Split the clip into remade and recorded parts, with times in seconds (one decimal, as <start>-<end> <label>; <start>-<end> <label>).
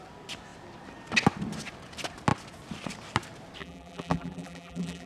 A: 0.0-3.6 recorded; 3.6-5.1 remade